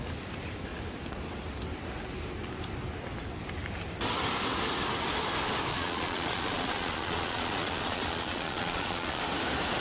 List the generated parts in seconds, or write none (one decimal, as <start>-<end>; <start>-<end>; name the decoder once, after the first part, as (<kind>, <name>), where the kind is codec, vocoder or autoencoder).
5.7-9.2 (vocoder, Vocos)